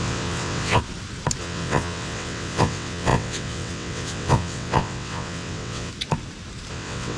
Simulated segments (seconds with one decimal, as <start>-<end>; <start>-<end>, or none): 0.0-0.8; 1.4-5.9; 6.7-7.2